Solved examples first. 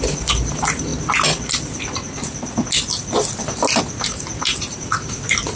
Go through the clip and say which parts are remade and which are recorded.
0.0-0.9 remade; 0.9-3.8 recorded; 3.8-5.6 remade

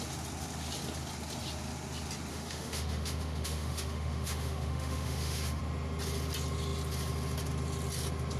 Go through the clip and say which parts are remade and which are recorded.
0.0-2.3 recorded; 2.3-5.6 remade; 5.6-8.4 recorded

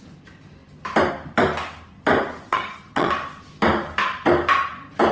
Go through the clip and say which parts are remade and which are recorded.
0.0-2.5 recorded; 2.5-3.1 remade; 3.1-5.1 recorded

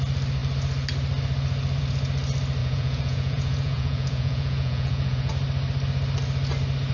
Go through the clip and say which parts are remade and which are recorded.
0.0-2.6 recorded; 2.6-5.3 remade; 5.3-6.9 recorded

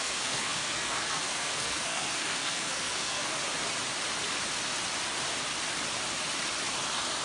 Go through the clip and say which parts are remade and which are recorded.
0.0-3.3 remade; 3.3-7.2 recorded